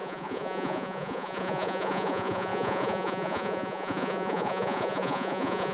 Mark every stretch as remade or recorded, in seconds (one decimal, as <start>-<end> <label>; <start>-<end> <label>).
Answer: 0.0-5.7 remade